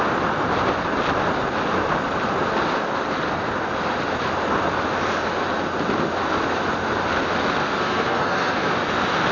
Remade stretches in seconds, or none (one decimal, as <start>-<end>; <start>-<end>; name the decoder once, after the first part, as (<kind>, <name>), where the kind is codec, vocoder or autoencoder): 7.6-8.7 (codec, SNAC)

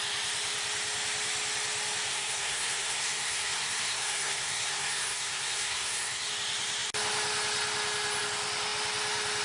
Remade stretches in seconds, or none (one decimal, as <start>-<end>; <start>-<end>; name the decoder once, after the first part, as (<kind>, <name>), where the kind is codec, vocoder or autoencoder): 2.1-6.3 (codec, SNAC)

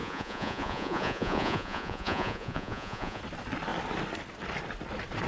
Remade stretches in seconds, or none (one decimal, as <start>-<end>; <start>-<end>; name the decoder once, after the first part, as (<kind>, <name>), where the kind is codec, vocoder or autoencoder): 0.0-3.2 (vocoder, Vocos)